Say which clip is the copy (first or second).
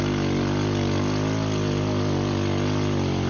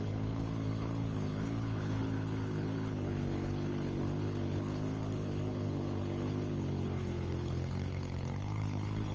second